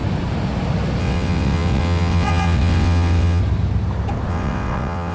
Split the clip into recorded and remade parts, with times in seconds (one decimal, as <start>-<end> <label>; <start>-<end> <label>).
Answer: 0.0-1.0 recorded; 1.0-3.4 remade; 3.4-4.3 recorded; 4.3-5.1 remade